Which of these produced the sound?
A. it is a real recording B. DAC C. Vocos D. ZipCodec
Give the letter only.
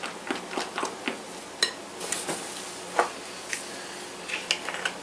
A